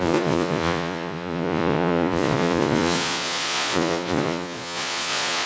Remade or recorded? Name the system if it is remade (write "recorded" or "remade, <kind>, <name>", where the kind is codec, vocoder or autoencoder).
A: remade, vocoder, Vocos